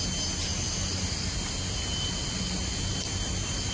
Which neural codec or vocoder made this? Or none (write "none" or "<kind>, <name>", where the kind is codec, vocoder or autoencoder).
none